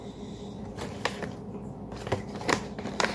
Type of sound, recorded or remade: recorded